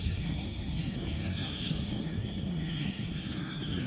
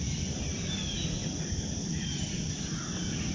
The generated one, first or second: first